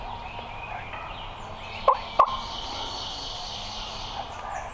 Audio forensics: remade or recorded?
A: recorded